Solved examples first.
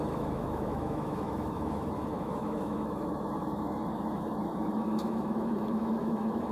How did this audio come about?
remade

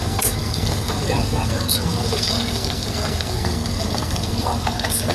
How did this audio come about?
remade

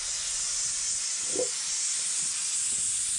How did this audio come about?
recorded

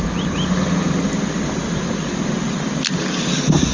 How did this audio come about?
recorded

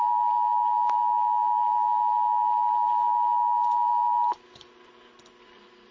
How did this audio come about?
recorded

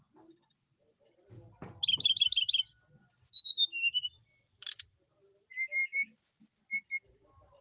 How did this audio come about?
recorded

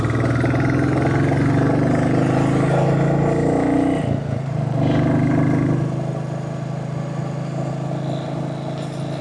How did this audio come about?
recorded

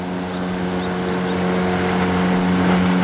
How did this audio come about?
recorded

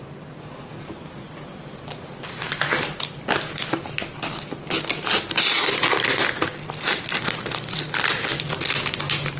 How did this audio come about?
recorded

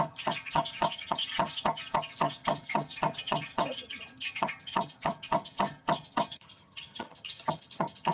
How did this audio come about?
remade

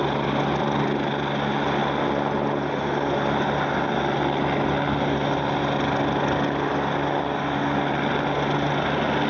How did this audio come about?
recorded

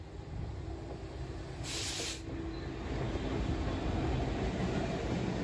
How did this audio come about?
recorded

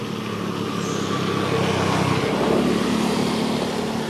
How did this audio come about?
recorded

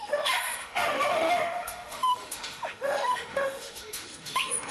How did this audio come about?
remade